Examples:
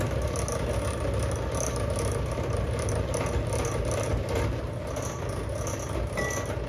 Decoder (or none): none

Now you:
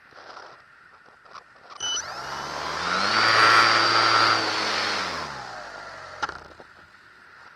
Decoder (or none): none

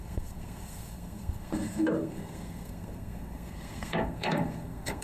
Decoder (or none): codec, SNAC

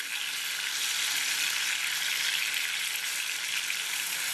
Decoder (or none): none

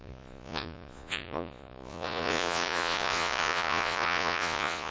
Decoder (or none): vocoder, Vocos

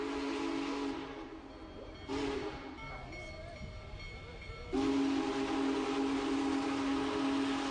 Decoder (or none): none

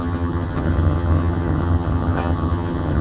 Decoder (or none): vocoder, HiFi-GAN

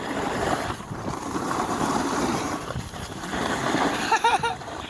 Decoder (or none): vocoder, BigVGAN v2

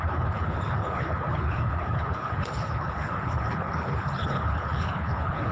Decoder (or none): codec, HILCodec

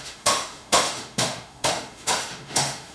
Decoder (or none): autoencoder, DAC-VAE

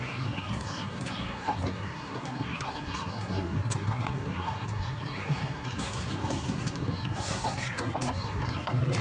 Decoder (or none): codec, SNAC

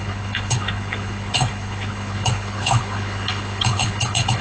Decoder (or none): codec, HILCodec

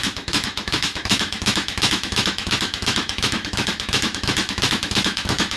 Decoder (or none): autoencoder, DAC-VAE